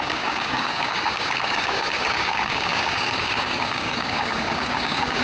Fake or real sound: fake